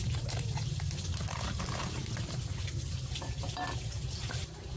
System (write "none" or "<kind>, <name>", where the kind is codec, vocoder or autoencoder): none